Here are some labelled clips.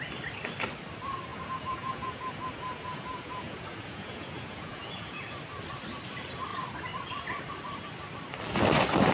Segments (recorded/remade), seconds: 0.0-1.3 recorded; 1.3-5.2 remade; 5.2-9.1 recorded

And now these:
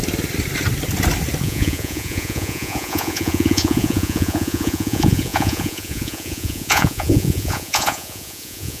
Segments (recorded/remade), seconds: 0.0-1.4 recorded; 1.4-8.8 remade

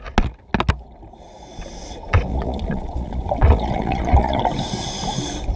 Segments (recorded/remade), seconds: 0.0-2.3 recorded; 2.3-4.4 remade; 4.4-5.6 recorded

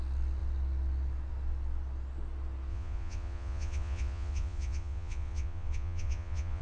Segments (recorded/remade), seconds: 0.0-2.7 recorded; 2.7-6.6 remade

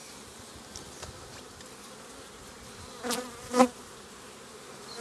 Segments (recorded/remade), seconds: 0.0-5.0 recorded

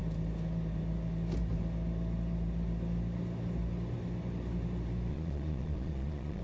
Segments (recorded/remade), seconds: 0.0-5.1 recorded; 5.1-6.4 remade

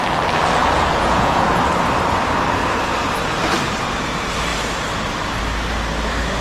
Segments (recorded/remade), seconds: 0.0-0.6 recorded; 0.6-1.6 remade; 1.6-6.4 recorded

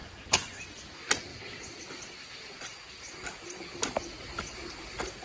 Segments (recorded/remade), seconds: 0.0-0.6 remade; 0.6-5.2 recorded